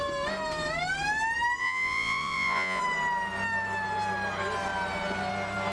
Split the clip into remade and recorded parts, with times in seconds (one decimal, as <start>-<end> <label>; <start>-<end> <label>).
0.0-1.6 recorded; 1.6-2.8 remade; 2.8-5.7 recorded